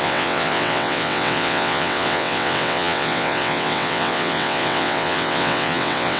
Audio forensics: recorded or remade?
remade